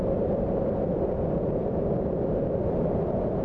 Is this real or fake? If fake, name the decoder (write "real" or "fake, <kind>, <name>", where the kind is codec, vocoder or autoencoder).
real